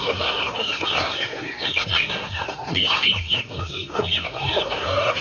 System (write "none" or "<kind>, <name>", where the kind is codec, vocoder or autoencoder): codec, SNAC